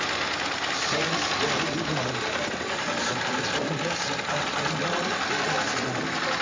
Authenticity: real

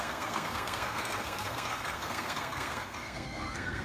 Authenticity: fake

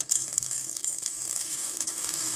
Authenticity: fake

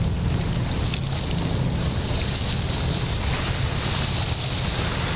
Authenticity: real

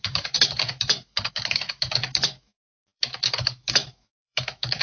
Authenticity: fake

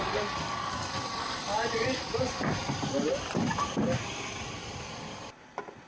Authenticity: real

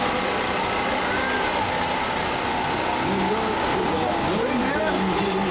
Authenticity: real